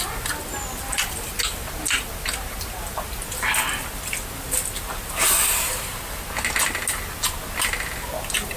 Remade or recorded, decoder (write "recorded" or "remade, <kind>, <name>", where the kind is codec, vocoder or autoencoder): recorded